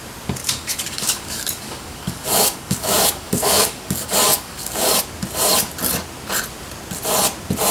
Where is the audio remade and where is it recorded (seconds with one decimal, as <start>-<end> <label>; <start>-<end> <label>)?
0.0-0.4 recorded; 0.4-5.0 remade; 5.0-7.7 recorded